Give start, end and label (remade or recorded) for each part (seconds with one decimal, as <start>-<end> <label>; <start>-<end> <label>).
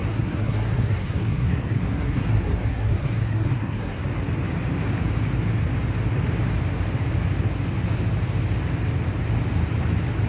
0.0-4.0 remade; 4.0-10.3 recorded